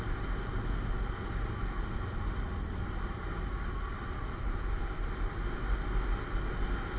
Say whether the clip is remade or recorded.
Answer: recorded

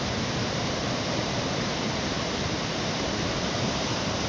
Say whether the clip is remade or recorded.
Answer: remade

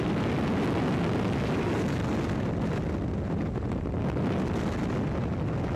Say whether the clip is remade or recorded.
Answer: recorded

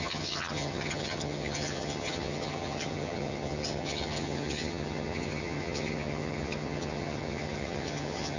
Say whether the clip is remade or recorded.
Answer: remade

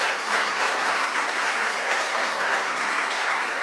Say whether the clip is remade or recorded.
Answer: remade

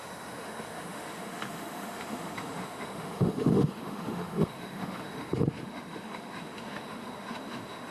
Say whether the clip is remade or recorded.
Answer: remade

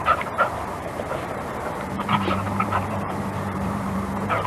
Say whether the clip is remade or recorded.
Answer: remade